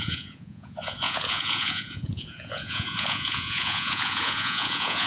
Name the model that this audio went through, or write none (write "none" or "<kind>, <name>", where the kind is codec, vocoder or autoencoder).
vocoder, Vocos